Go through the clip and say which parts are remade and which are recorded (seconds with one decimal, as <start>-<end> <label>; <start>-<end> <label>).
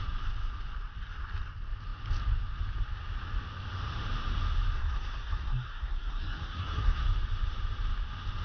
0.0-4.8 recorded; 4.8-7.0 remade; 7.0-8.4 recorded